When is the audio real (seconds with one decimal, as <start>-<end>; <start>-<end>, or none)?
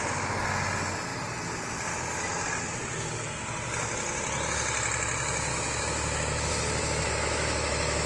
0.0-5.5